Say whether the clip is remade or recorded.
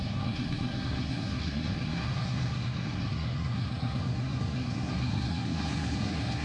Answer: remade